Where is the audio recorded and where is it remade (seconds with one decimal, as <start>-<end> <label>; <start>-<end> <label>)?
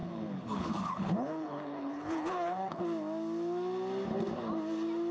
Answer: 0.0-2.8 remade; 2.8-5.1 recorded